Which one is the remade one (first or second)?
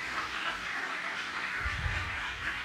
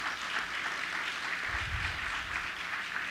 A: first